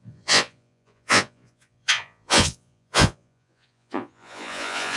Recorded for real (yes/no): no